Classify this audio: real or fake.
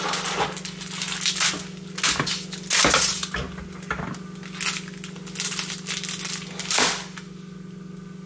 real